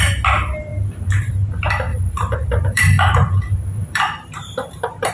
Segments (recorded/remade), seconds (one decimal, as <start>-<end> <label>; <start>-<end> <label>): 0.0-0.7 recorded; 0.7-1.3 remade; 1.3-1.9 recorded; 1.9-5.1 remade